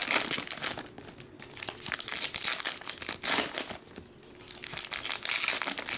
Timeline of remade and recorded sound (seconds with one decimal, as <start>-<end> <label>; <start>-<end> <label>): 0.0-6.0 recorded